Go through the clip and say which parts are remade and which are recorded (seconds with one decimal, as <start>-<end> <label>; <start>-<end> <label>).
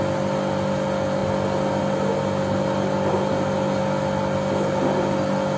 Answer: 0.0-5.6 recorded